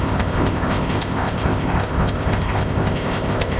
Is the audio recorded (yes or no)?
no